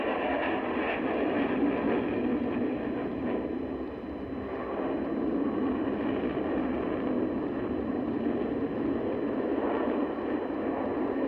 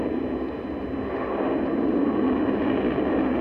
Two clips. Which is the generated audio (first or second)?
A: first